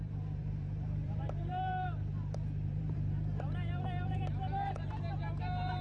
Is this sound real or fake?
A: fake